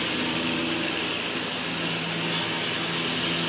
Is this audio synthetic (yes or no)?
no